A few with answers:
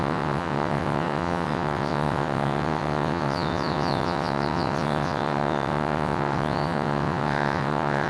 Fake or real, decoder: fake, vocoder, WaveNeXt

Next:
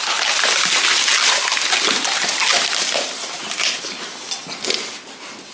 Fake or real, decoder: real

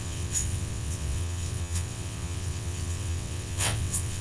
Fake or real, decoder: fake, vocoder, WaveNeXt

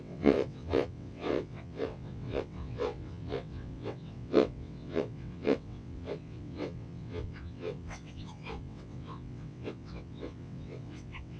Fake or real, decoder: fake, vocoder, WaveNeXt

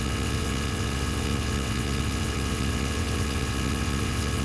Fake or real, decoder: fake, vocoder, WaveNeXt